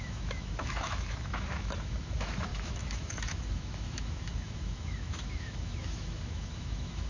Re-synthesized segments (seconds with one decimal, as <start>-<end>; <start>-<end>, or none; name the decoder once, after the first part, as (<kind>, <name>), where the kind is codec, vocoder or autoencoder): 0.0-7.1 (autoencoder, DAC-VAE)